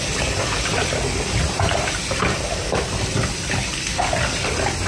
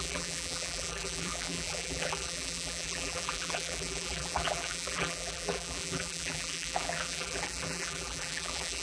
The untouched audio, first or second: first